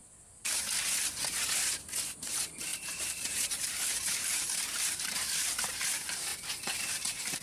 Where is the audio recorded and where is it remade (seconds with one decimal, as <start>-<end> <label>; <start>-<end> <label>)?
0.0-2.2 recorded; 2.2-6.3 remade; 6.3-6.9 recorded; 6.9-7.4 remade